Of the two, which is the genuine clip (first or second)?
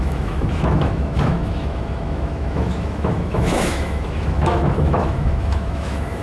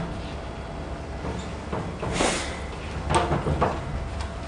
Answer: second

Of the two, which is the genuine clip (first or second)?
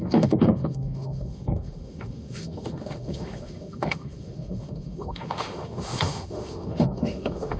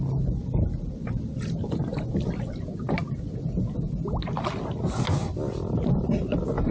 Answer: second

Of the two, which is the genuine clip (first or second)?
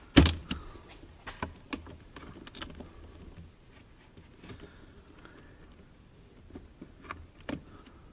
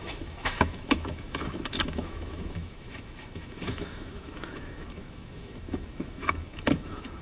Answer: first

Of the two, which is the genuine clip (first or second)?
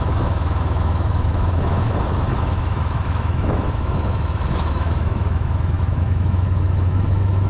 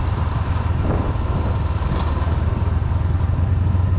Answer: second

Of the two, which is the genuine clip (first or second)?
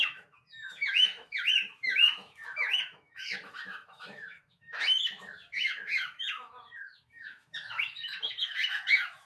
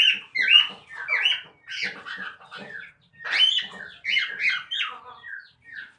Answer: second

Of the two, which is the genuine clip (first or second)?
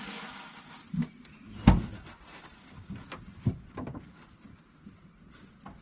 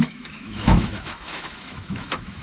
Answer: first